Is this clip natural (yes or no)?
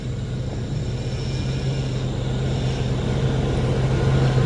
yes